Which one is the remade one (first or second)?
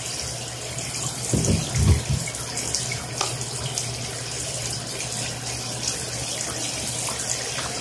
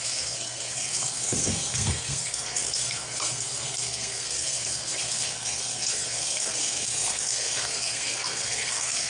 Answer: second